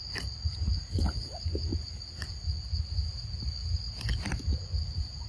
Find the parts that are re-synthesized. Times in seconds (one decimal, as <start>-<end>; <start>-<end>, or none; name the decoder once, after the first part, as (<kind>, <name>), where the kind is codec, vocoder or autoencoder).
none